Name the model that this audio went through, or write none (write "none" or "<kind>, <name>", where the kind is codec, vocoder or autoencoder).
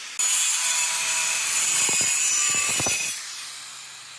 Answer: none